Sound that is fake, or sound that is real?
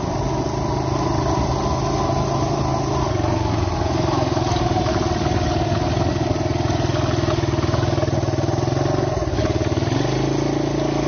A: real